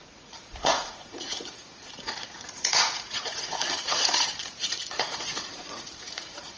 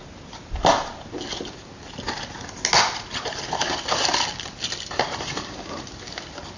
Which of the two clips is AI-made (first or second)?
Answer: first